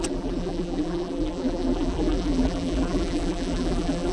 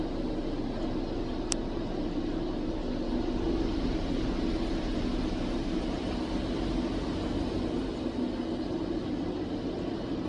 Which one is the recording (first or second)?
second